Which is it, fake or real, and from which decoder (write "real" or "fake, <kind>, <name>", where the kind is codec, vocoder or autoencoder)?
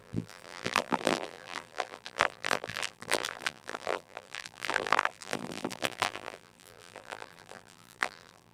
fake, vocoder, BigVGAN v2